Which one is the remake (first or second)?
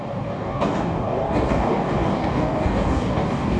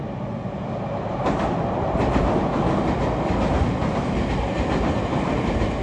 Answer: first